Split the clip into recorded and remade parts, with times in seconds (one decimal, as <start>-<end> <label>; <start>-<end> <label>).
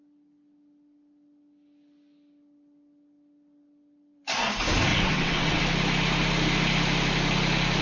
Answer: 0.0-4.9 recorded; 4.9-5.6 remade; 5.6-7.8 recorded